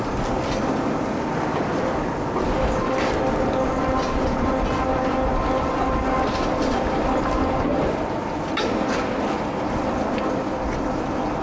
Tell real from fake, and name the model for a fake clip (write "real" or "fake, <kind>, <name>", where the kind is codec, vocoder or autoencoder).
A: real